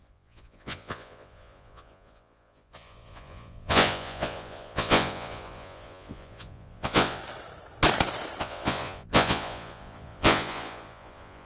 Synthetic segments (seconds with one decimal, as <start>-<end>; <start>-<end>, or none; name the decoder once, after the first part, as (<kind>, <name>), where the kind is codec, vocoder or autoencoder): 0.0-7.2 (vocoder, Vocos); 8.4-11.5